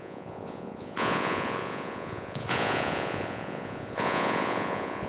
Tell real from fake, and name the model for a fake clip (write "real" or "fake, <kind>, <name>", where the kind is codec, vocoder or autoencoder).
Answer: fake, vocoder, Vocos